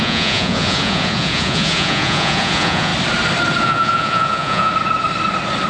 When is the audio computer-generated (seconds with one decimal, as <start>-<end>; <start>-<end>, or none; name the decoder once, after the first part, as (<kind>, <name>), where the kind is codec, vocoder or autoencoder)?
0.0-2.9 (vocoder, Vocos); 3.6-4.7